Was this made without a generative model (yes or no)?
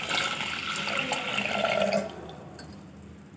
yes